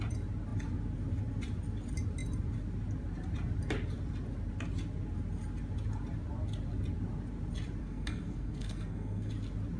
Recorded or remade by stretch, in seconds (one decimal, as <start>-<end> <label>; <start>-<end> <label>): 0.0-7.8 recorded; 7.8-9.3 remade; 9.3-9.8 recorded